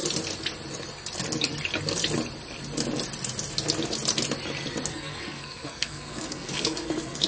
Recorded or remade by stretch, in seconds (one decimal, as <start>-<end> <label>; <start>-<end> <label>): 0.0-4.9 recorded; 4.9-7.3 remade